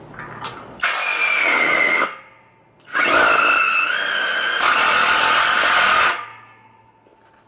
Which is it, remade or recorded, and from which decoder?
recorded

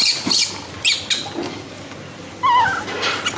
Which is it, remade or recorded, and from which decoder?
recorded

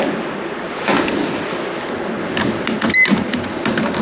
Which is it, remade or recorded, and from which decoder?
recorded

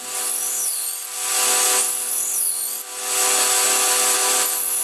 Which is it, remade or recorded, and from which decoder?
recorded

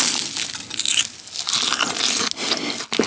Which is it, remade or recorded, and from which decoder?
recorded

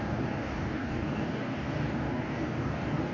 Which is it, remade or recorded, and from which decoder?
remade, codec, DAC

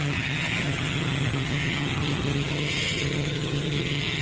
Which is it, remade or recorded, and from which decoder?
remade, vocoder, HiFi-GAN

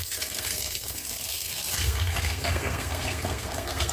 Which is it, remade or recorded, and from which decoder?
remade, codec, SNAC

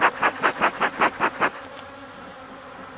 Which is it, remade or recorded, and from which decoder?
recorded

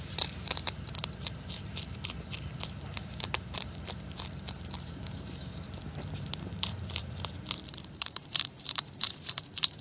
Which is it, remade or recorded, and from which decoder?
remade, vocoder, BigVGAN v2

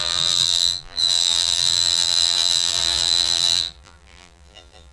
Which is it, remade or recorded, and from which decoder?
remade, vocoder, BigVGAN v2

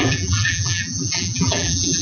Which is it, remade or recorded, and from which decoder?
remade, vocoder, BigVGAN v2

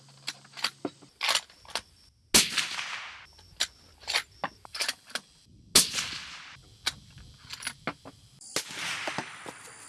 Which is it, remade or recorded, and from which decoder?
recorded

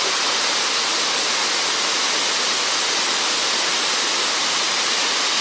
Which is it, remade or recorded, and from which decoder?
recorded